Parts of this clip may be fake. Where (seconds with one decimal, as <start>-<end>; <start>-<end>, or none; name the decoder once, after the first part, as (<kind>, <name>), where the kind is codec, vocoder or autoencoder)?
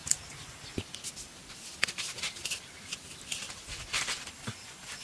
none